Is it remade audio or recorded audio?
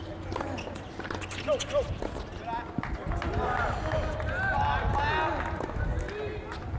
recorded